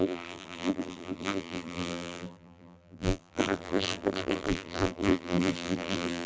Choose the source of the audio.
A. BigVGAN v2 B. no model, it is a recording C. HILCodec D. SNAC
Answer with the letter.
A